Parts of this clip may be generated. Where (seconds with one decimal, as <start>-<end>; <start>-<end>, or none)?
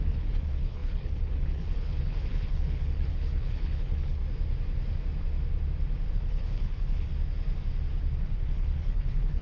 0.0-4.2; 6.1-7.1; 8.2-9.4